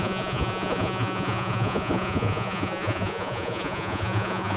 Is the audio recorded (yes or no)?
no